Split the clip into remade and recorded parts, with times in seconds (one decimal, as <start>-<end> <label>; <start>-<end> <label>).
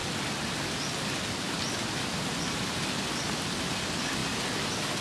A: 0.0-5.0 recorded